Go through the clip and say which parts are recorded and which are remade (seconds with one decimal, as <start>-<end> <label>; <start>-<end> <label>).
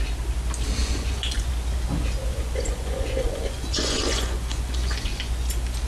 0.0-0.8 recorded; 0.8-1.5 remade; 1.5-2.3 recorded; 2.3-5.5 remade; 5.5-5.9 recorded